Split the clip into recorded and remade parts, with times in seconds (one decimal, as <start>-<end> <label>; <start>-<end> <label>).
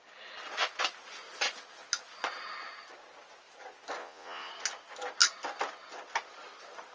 0.0-4.0 recorded; 4.0-4.5 remade; 4.5-6.9 recorded